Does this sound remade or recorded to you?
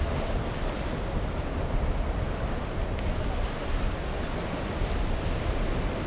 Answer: recorded